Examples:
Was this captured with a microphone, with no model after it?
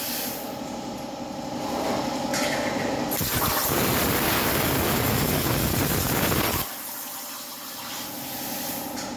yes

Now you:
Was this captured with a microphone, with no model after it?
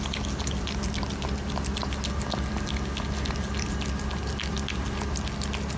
yes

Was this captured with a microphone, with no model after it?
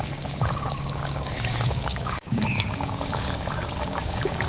no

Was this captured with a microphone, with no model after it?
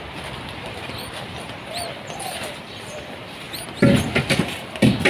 yes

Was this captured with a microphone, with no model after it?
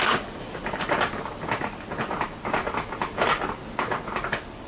yes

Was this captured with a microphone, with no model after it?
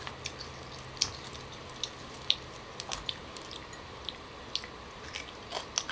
yes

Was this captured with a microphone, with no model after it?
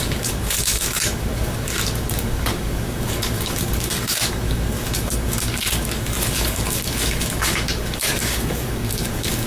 no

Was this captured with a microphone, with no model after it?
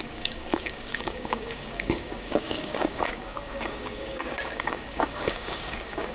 no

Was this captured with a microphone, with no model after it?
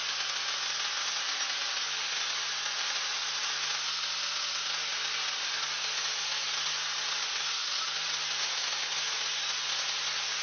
yes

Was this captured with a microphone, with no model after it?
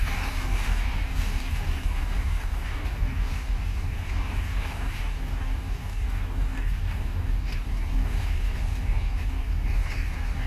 no